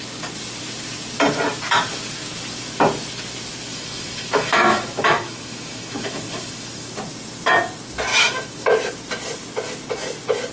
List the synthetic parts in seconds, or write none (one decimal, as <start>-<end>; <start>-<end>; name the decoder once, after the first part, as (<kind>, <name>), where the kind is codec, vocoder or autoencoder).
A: 3.7-6.9 (autoencoder, DAC-VAE); 8.1-8.7